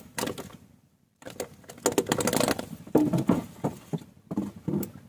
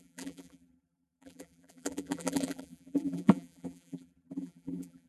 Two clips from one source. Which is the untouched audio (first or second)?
first